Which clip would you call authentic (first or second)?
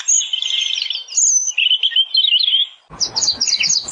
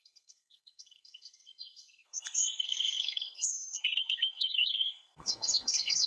first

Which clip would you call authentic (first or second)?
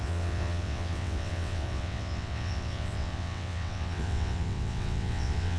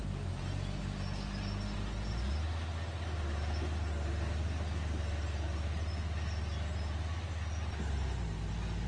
second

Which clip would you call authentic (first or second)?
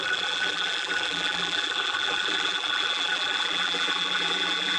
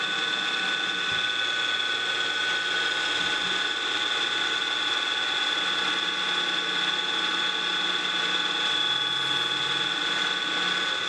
second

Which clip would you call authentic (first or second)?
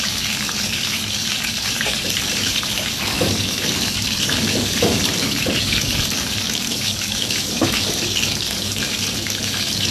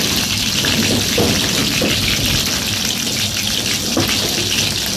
second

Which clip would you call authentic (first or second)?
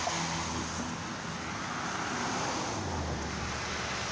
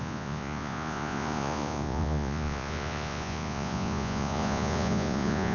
first